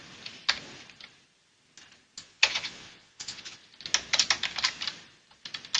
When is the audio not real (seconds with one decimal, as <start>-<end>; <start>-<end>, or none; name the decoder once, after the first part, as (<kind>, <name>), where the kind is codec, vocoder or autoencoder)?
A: 2.2-3.6 (vocoder, Vocos)